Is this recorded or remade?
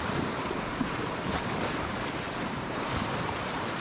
remade